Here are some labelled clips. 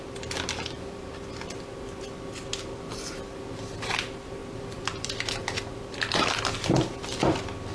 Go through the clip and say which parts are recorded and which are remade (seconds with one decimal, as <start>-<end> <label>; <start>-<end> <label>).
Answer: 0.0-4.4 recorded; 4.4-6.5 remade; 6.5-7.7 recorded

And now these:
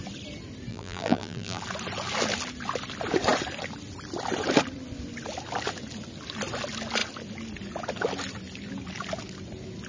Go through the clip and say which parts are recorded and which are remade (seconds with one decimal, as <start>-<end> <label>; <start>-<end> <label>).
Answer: 0.0-0.7 recorded; 0.7-1.6 remade; 1.6-9.9 recorded

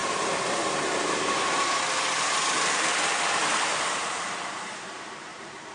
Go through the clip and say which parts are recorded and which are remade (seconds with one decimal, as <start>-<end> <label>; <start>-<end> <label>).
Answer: 0.0-1.5 remade; 1.5-2.4 recorded; 2.4-5.7 remade

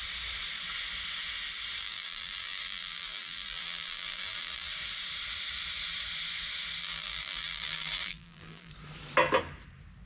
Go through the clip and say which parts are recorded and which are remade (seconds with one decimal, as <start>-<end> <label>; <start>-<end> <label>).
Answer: 0.0-1.8 recorded; 1.8-4.7 remade; 4.7-6.8 recorded; 6.8-8.7 remade; 8.7-10.1 recorded

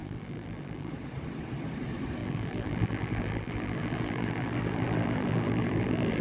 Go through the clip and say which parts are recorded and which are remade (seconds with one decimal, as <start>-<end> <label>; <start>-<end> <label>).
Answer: 0.0-0.9 remade; 0.9-2.2 recorded; 2.2-6.2 remade

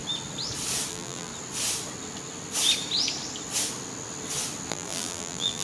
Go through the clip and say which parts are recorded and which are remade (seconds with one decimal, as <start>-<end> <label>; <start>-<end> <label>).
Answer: 0.0-0.9 recorded; 0.9-1.3 remade; 1.3-4.7 recorded; 4.7-5.6 remade